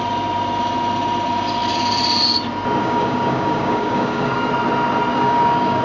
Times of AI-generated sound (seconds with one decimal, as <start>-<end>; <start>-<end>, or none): 2.8-4.5; 5.1-5.8